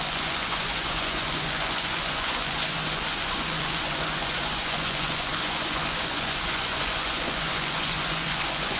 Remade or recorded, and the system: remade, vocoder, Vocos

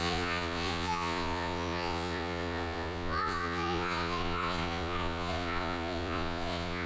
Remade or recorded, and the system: remade, vocoder, Vocos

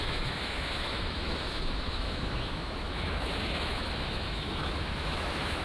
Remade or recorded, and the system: remade, autoencoder, DAC-VAE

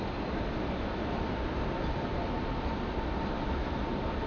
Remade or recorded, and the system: recorded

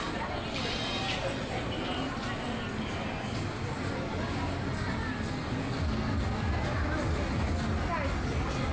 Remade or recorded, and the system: recorded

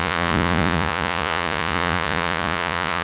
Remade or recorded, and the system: remade, vocoder, Vocos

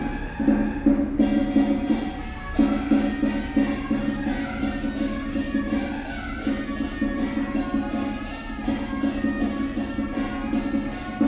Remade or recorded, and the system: recorded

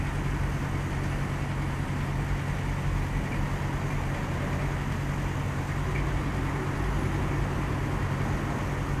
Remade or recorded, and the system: recorded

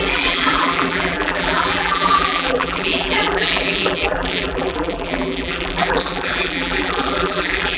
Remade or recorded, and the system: remade, vocoder, BigVGAN v2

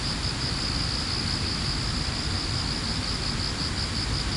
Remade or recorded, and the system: recorded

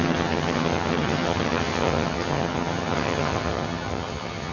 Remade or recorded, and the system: remade, vocoder, HiFi-GAN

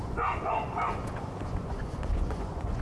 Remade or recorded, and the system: remade, vocoder, Vocos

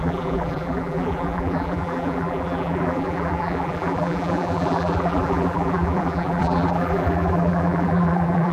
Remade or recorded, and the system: remade, vocoder, BigVGAN v2